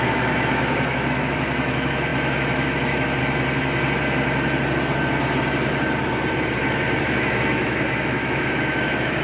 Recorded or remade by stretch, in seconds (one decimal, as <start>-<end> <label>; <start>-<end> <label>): 0.0-3.2 remade; 3.2-6.6 recorded; 6.6-9.2 remade